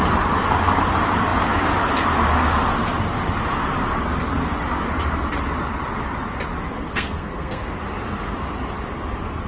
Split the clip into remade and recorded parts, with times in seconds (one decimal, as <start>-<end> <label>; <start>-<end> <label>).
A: 0.0-6.7 recorded; 6.7-7.7 remade; 7.7-9.5 recorded